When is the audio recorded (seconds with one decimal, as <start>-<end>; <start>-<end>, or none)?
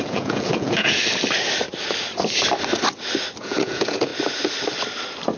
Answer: 1.0-3.4; 4.1-5.4